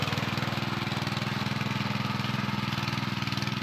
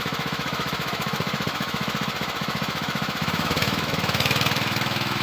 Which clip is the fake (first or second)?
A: second